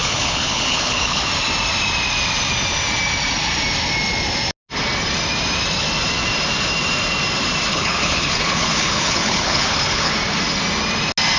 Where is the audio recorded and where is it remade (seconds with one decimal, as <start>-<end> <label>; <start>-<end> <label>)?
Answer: 0.0-1.3 remade; 1.3-7.7 recorded; 7.7-10.1 remade; 10.1-11.4 recorded